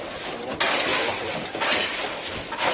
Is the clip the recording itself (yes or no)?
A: yes